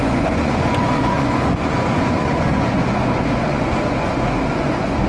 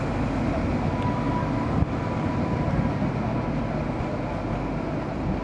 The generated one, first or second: first